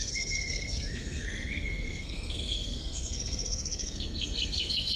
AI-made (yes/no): yes